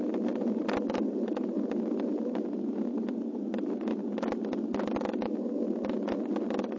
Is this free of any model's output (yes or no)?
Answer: yes